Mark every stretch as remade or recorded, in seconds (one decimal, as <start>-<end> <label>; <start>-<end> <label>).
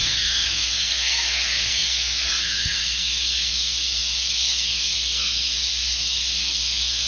0.0-7.1 remade